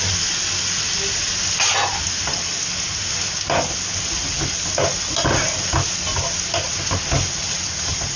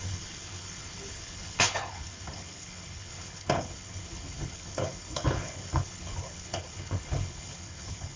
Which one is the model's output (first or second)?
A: second